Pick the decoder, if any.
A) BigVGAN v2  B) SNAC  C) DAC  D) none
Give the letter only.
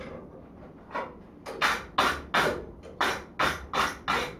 D